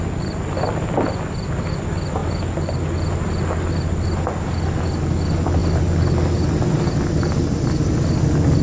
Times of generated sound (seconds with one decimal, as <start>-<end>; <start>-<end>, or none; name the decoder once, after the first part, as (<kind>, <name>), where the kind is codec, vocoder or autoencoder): none